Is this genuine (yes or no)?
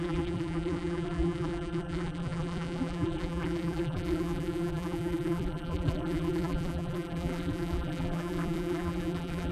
no